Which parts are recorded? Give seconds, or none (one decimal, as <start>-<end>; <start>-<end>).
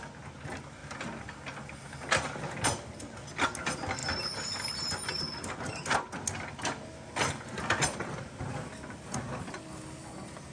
0.0-10.5